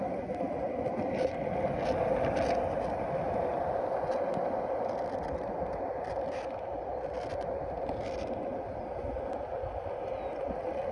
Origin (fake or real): real